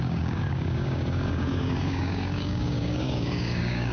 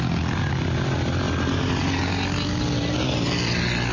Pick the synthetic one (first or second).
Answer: first